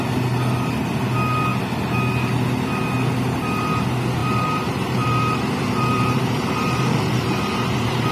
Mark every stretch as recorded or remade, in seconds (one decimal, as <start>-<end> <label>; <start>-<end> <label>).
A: 0.0-4.2 recorded; 4.2-8.1 remade